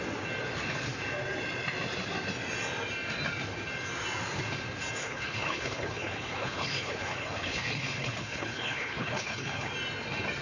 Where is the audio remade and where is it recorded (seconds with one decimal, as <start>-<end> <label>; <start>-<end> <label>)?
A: 0.0-5.0 recorded; 5.0-9.7 remade; 9.7-10.4 recorded